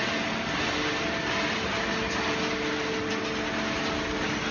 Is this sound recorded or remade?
recorded